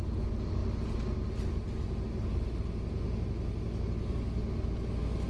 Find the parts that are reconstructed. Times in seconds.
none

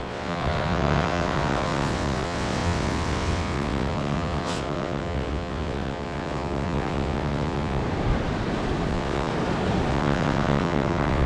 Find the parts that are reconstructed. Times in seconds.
0.0-7.8; 8.9-9.3; 9.9-11.3